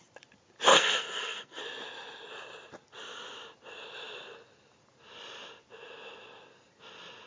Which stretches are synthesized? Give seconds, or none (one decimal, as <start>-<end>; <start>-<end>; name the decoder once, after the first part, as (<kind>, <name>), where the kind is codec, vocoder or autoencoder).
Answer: 0.7-1.6 (codec, SNAC)